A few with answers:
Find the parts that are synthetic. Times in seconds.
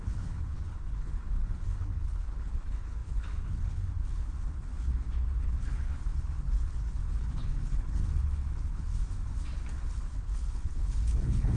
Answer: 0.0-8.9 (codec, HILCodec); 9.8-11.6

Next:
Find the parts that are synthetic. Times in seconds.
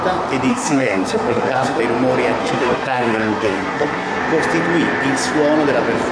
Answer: 0.5-1.8 (codec, SNAC); 2.4-4.2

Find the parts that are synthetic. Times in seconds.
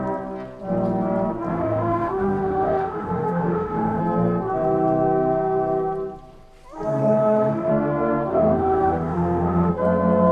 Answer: 1.5-4.0 (autoencoder, DAC-VAE); 7.0-7.7; 8.3-9.7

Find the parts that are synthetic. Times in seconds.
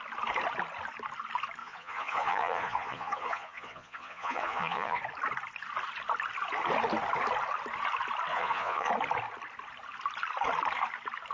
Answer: 1.6-5.0 (vocoder, Vocos); 8.3-8.9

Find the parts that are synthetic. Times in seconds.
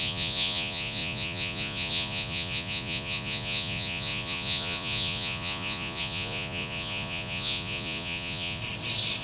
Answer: 0.0-8.6 (vocoder, Vocos)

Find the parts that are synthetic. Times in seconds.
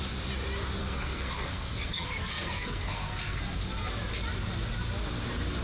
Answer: 0.8-3.4 (codec, SNAC)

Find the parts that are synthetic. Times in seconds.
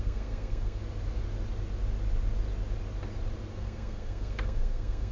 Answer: 0.0-0.8 (codec, SNAC); 3.5-5.1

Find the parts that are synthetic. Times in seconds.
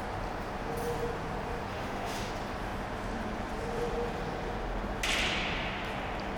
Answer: 1.7-2.3 (autoencoder, DAC-VAE)